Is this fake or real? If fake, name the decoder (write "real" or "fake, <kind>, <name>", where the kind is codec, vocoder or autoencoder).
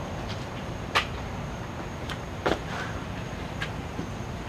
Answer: fake, vocoder, BigVGAN v2